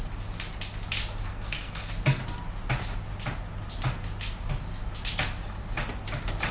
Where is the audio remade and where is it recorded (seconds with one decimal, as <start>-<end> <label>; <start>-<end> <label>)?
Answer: 0.0-1.3 recorded; 1.3-1.9 remade; 1.9-6.5 recorded

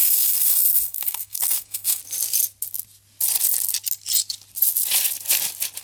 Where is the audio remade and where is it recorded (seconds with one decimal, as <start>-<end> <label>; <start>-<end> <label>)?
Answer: 0.0-2.0 remade; 2.0-5.8 recorded

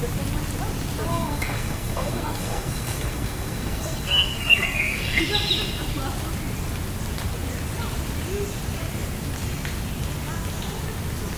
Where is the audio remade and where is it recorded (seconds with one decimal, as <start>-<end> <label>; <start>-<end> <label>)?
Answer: 0.0-1.1 recorded; 1.1-5.2 remade; 5.2-11.4 recorded

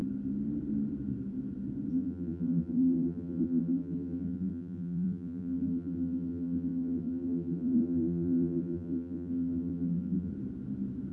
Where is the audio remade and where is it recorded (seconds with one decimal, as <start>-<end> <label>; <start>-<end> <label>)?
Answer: 0.0-1.9 recorded; 1.9-10.3 remade; 10.3-11.1 recorded

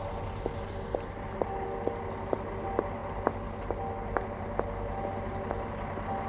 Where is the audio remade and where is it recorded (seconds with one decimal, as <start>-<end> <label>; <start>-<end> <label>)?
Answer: 0.0-6.3 recorded